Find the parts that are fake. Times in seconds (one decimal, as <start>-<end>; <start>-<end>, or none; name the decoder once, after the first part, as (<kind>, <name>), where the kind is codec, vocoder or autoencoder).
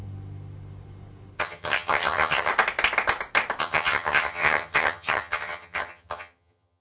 1.4-2.5 (vocoder, HiFi-GAN); 3.6-6.8